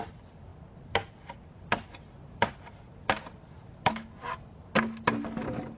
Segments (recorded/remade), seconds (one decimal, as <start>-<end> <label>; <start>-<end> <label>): 0.0-5.8 recorded